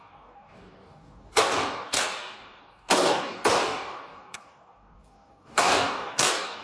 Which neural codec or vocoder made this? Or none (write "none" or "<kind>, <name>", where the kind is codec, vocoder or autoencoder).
codec, DAC